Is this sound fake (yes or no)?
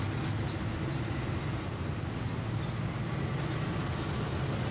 no